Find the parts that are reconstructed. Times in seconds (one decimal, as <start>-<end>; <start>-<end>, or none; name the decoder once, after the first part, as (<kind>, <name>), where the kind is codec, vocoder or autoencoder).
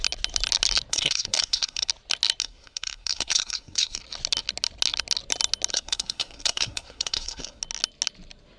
0.9-1.9 (codec, SNAC); 2.4-4.0; 5.7-7.6